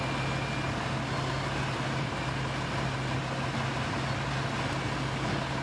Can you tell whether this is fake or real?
real